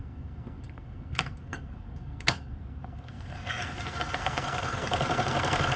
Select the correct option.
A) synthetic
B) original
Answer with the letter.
A